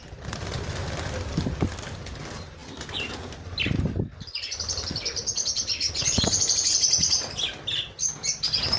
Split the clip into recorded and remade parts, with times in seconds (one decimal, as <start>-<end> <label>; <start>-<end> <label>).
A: 0.0-8.8 recorded